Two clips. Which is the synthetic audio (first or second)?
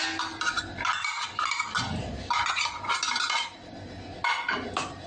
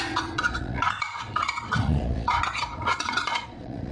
second